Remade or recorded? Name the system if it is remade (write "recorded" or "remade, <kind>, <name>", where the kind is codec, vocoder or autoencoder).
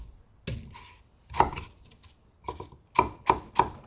recorded